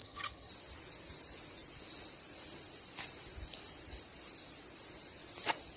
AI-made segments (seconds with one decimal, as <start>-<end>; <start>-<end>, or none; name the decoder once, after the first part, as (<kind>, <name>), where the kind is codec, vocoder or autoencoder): 0.0-0.5 (vocoder, HiFi-GAN)